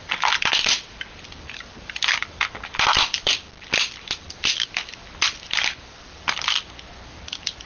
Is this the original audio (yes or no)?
no